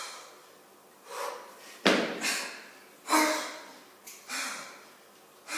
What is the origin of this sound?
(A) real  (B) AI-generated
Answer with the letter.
A